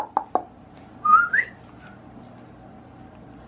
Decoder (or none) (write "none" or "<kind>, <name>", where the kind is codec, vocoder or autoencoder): none